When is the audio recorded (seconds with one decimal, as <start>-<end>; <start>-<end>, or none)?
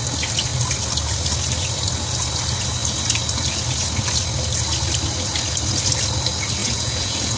0.0-6.6